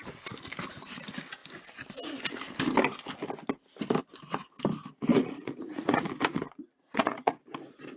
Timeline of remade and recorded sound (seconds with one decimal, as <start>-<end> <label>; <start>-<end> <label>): 0.0-5.1 recorded; 5.1-7.4 remade; 7.4-8.0 recorded